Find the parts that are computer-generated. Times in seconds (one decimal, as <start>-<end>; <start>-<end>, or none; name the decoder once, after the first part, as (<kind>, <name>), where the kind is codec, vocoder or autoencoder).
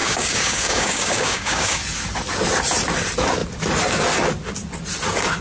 0.0-1.8 (codec, DAC)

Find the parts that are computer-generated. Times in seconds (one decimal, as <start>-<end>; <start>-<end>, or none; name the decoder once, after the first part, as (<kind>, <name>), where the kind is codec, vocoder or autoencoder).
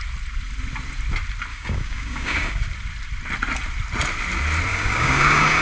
1.5-2.6 (codec, DAC); 4.7-5.6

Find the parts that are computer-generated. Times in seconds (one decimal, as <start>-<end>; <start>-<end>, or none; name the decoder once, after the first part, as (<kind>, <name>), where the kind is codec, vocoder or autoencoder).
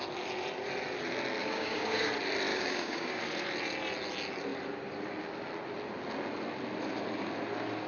1.4-2.1 (codec, DAC); 2.5-3.2